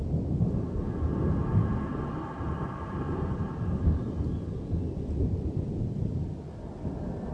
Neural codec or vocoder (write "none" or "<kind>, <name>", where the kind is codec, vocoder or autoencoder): none